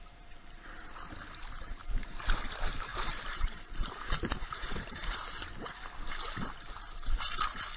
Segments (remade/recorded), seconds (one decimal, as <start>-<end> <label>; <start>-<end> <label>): 0.0-2.9 recorded; 2.9-5.8 remade; 5.8-7.8 recorded